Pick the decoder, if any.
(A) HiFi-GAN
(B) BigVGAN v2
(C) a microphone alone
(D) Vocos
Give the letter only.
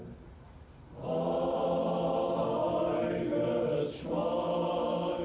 C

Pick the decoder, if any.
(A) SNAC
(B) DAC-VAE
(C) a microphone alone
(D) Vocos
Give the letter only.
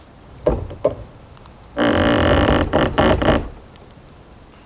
C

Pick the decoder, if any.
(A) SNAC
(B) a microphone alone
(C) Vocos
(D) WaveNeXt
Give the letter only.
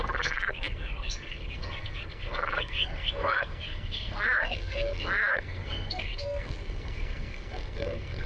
A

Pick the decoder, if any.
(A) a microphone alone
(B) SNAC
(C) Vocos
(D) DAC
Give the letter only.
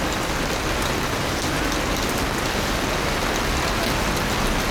A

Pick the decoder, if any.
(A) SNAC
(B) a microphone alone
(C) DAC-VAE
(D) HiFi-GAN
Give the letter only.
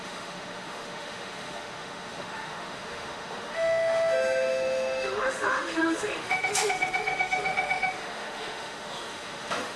C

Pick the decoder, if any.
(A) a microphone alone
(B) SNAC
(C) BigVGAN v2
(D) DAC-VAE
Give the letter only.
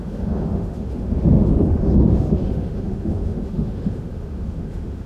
D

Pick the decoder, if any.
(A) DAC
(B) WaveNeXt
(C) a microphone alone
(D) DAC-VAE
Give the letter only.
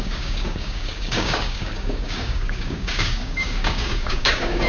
A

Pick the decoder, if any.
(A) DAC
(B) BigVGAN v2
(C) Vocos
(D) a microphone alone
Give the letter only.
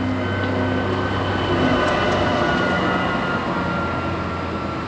D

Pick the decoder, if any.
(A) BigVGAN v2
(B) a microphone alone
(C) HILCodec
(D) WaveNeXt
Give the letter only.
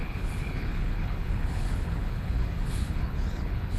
C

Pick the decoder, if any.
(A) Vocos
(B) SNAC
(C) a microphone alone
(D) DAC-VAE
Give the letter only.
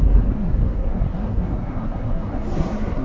B